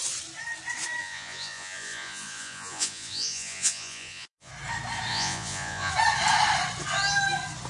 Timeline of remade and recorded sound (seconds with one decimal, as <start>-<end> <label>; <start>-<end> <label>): 0.0-1.0 recorded; 1.0-4.5 remade; 4.5-5.1 recorded; 5.1-5.9 remade; 5.9-7.7 recorded